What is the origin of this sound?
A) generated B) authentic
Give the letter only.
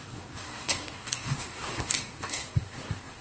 A